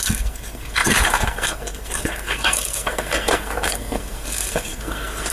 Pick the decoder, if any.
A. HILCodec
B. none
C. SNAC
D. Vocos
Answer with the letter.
C